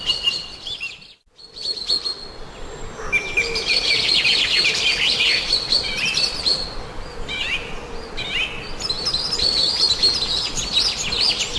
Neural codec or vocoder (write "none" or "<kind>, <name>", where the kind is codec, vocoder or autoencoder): none